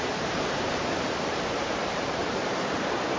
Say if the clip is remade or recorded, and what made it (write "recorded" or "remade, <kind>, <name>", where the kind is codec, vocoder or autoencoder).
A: remade, vocoder, BigVGAN v2